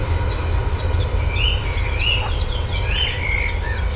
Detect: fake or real real